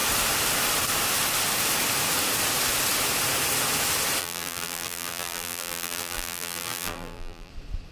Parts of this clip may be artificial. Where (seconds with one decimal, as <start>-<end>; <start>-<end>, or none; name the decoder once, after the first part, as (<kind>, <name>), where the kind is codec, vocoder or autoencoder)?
4.2-7.5 (vocoder, BigVGAN v2)